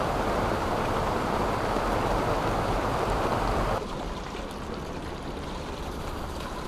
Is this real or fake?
fake